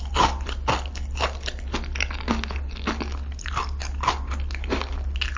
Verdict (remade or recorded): recorded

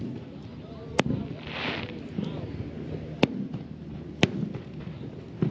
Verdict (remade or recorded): recorded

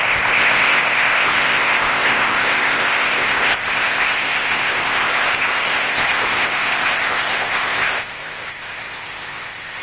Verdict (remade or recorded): remade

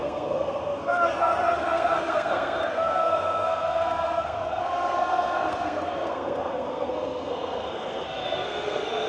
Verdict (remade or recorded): remade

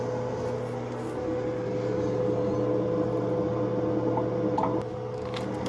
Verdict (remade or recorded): recorded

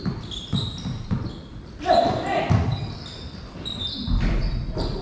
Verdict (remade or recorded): recorded